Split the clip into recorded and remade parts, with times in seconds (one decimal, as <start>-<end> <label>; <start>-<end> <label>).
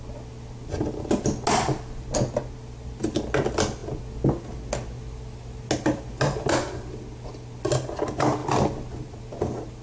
0.0-9.8 recorded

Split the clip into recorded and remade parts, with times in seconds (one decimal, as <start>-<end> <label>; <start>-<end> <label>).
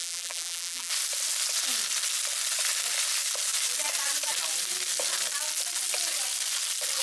0.0-0.9 remade; 0.9-7.0 recorded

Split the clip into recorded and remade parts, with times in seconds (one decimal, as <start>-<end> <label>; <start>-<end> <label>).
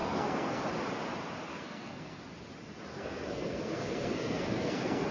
0.0-0.6 remade; 0.6-1.5 recorded; 1.5-2.2 remade; 2.2-2.9 recorded; 2.9-5.1 remade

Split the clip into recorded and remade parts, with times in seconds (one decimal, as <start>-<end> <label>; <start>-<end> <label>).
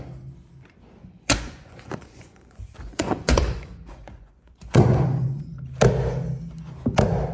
0.0-1.0 recorded; 1.0-5.4 remade; 5.4-7.3 recorded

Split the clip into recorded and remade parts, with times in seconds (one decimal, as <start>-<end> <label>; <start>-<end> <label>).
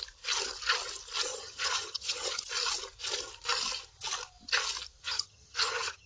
0.0-1.3 recorded; 1.3-2.4 remade; 2.4-5.0 recorded; 5.0-6.1 remade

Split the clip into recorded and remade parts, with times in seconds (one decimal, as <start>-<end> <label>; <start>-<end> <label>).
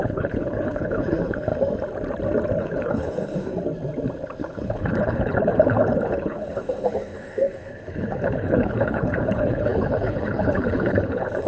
0.0-1.5 remade; 1.5-2.6 recorded; 2.6-3.5 remade; 3.5-4.4 recorded; 4.4-11.5 remade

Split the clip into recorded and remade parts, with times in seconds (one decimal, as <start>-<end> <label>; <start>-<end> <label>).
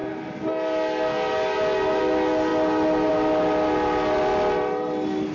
0.0-5.3 recorded